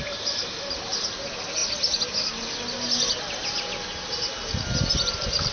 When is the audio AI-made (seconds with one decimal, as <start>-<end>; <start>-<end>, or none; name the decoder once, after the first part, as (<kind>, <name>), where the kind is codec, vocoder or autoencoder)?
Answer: 0.0-1.6 (vocoder, BigVGAN v2); 4.9-5.5